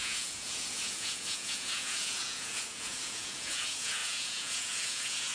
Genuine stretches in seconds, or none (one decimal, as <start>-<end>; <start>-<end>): none